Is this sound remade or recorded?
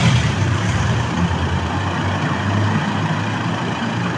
remade